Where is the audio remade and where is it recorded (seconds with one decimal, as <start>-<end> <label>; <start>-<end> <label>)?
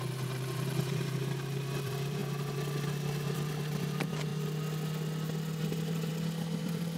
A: 0.0-4.3 remade; 4.3-5.6 recorded; 5.6-6.1 remade; 6.1-6.6 recorded; 6.6-7.0 remade